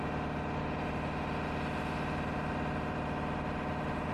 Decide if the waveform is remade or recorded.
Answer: recorded